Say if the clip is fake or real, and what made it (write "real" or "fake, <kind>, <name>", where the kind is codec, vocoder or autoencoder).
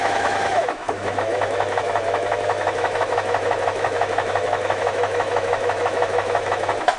fake, autoencoder, DAC-VAE